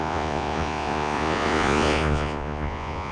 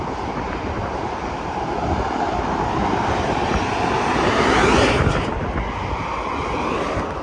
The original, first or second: second